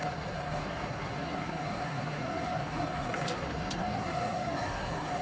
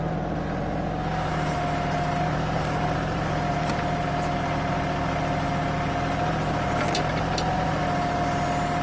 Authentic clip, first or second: second